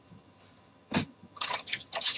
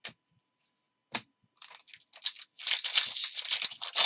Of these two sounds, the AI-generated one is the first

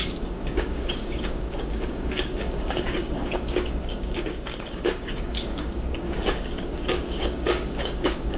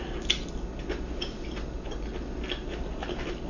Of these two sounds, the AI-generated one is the first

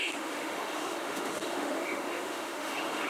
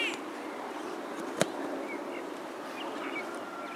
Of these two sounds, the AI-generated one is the first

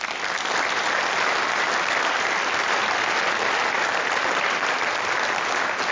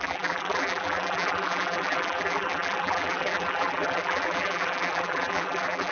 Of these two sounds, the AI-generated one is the second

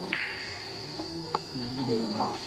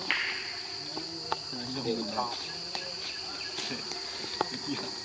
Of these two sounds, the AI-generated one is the first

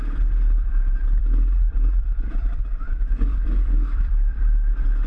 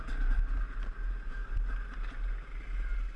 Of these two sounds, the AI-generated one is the first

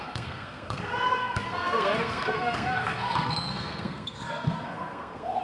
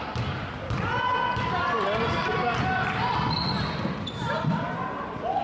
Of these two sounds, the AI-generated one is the first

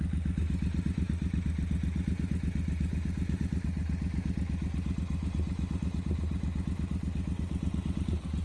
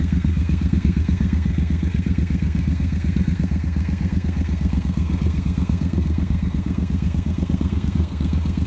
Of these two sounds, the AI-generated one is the second